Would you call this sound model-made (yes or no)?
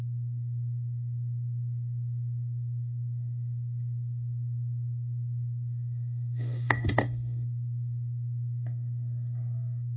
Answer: yes